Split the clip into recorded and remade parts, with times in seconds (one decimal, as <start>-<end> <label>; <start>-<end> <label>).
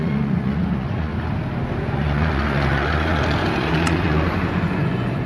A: 0.0-1.1 remade; 1.1-1.8 recorded; 1.8-5.3 remade